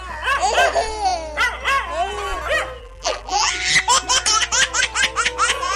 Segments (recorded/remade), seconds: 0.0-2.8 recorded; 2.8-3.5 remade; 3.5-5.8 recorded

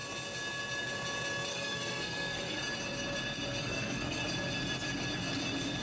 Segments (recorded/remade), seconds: 0.0-1.5 recorded; 1.5-2.6 remade; 2.6-3.6 recorded; 3.6-4.2 remade; 4.2-5.8 recorded

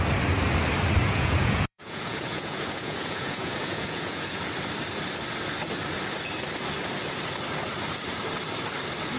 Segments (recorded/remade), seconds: 0.0-1.0 recorded; 1.0-4.4 remade; 4.4-9.2 recorded

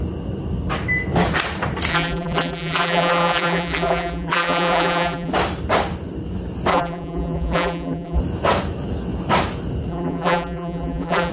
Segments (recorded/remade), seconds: 0.0-1.9 recorded; 1.9-5.3 remade; 5.3-6.7 recorded; 6.7-8.2 remade; 8.2-9.9 recorded; 9.9-11.3 remade

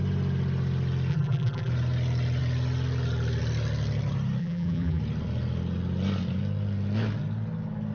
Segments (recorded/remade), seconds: 0.0-1.1 recorded; 1.1-1.7 remade; 1.7-4.4 recorded; 4.4-5.0 remade; 5.0-7.9 recorded

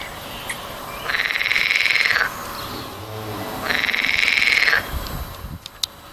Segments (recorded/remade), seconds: 0.0-6.1 recorded

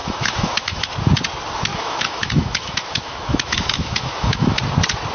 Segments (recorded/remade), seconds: 0.0-0.9 remade; 0.9-1.7 recorded; 1.7-4.6 remade; 4.6-5.1 recorded

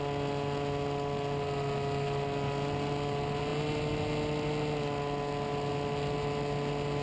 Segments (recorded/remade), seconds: 0.0-7.0 recorded